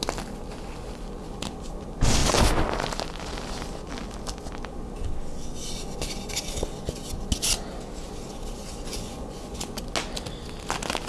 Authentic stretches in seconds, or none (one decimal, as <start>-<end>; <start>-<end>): 0.0-8.9; 9.8-11.1